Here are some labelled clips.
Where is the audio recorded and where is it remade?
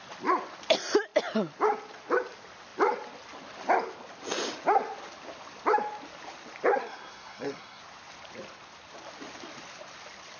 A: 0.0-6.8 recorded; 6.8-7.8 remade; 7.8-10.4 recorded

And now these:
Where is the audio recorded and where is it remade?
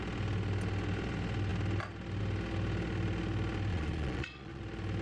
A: 0.0-3.7 recorded; 3.7-4.6 remade; 4.6-5.0 recorded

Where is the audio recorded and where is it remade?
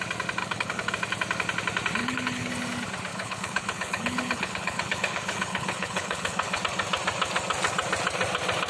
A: 0.0-0.4 recorded; 0.4-0.9 remade; 0.9-2.0 recorded; 2.0-2.5 remade; 2.5-3.1 recorded; 3.1-6.6 remade; 6.6-8.7 recorded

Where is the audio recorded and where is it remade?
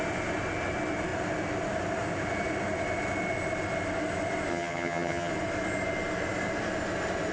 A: 0.0-4.5 recorded; 4.5-5.3 remade; 5.3-7.3 recorded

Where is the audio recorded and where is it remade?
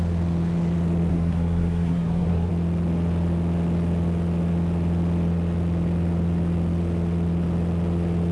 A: 0.0-1.1 recorded; 1.1-2.5 remade; 2.5-8.3 recorded